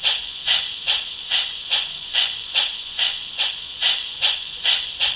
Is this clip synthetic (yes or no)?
yes